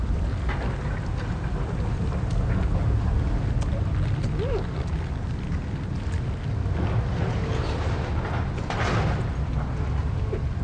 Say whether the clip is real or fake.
real